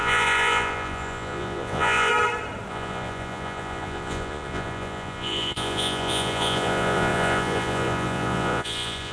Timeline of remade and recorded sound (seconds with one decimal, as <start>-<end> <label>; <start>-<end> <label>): 0.0-2.1 remade; 2.1-2.7 recorded; 2.7-9.1 remade